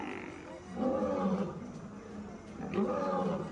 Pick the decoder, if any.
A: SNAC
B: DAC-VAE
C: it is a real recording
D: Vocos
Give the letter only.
C